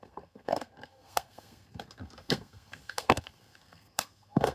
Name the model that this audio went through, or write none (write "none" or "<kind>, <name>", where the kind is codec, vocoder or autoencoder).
codec, SNAC